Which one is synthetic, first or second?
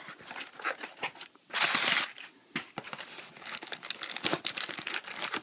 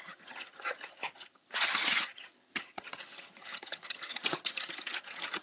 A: second